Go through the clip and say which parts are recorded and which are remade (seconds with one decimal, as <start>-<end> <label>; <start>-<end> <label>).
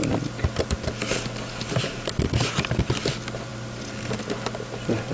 0.0-5.1 recorded